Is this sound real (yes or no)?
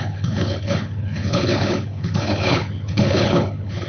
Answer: no